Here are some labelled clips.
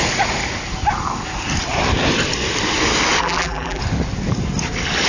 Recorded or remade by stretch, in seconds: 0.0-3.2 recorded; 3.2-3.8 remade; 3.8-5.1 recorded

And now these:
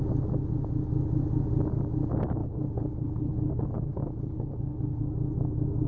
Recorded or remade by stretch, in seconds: 0.0-2.4 recorded; 2.4-5.0 remade; 5.0-5.9 recorded

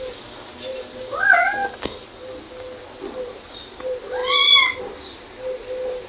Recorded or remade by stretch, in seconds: 0.0-6.1 recorded

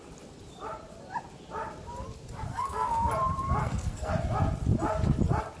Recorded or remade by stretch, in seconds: 0.0-2.5 recorded; 2.5-3.1 remade; 3.1-3.6 recorded; 3.6-4.1 remade; 4.1-5.6 recorded

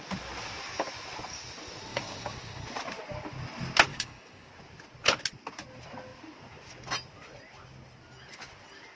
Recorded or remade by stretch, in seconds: 0.0-1.9 recorded; 1.9-2.6 remade; 2.6-3.9 recorded; 3.9-4.5 remade; 4.5-9.0 recorded

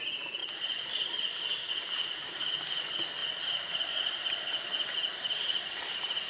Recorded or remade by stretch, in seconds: 0.0-6.3 recorded